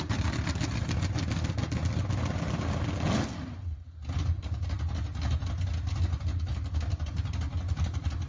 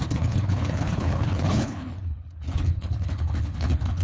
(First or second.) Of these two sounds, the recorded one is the first